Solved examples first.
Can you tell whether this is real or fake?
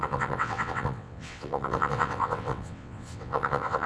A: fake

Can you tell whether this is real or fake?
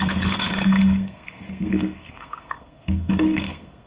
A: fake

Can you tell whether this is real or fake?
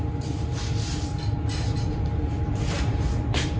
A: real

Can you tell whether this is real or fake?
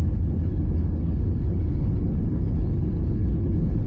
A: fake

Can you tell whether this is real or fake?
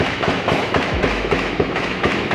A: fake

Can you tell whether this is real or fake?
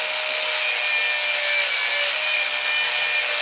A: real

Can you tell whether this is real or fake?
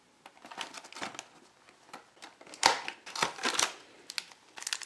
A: real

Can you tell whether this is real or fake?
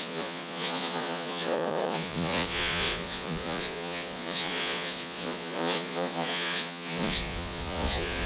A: fake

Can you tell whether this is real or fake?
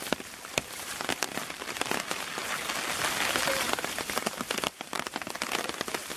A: real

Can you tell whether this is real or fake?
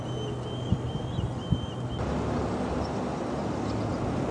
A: real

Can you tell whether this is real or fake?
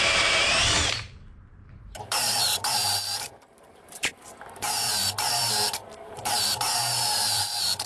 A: fake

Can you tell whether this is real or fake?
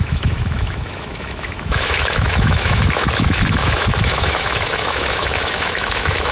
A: fake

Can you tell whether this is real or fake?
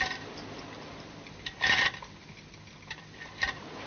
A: real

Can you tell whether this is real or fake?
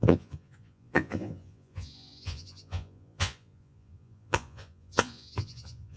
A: fake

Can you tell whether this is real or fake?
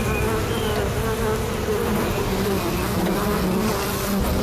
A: real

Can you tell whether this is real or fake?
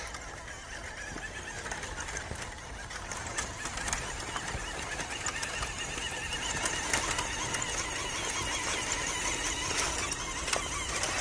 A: real